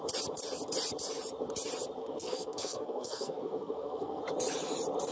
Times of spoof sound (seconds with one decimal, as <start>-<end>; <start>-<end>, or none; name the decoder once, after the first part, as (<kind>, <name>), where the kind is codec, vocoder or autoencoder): 2.0-4.2 (codec, SNAC)